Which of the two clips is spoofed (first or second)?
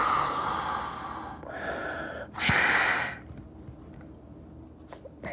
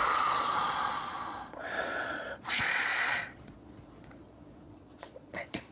second